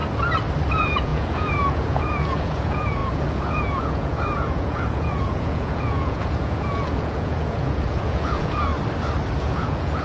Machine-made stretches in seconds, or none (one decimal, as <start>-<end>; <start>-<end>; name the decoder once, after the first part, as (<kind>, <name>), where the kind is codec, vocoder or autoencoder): 0.7-8.7 (vocoder, Vocos); 9.4-10.0